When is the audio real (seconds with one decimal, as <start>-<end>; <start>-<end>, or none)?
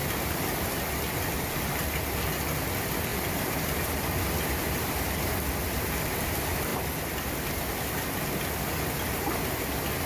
0.5-3.1; 3.9-10.1